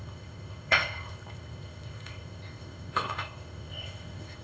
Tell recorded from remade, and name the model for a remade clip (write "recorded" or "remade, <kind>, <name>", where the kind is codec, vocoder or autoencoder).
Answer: remade, codec, ZipCodec